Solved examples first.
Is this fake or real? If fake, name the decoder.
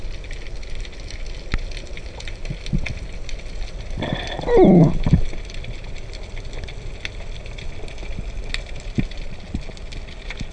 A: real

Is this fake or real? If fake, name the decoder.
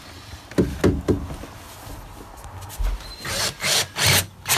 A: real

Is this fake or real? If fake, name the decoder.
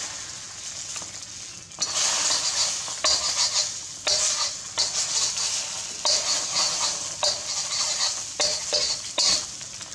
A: real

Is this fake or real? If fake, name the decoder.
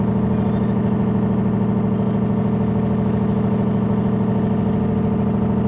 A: real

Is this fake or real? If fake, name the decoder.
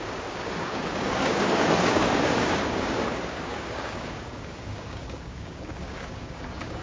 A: fake, codec, DAC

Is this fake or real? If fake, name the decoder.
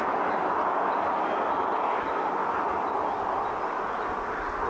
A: real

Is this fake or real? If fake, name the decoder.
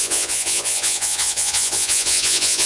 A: fake, vocoder, Vocos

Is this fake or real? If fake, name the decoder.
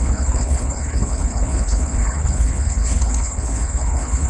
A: fake, codec, HILCodec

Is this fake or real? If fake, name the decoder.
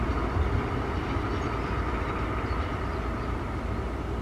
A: fake, vocoder, BigVGAN v2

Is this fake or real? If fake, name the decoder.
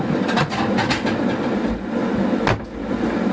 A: real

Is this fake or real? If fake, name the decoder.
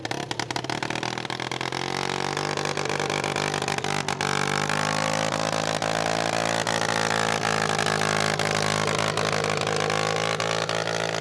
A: real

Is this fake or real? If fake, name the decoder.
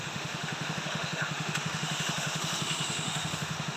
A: fake, autoencoder, DAC-VAE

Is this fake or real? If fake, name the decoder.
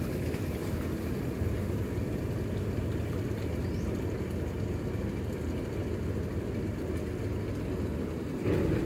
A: real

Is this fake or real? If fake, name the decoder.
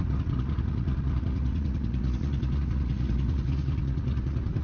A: fake, vocoder, Vocos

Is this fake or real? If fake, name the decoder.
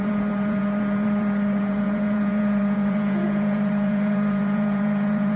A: fake, vocoder, Vocos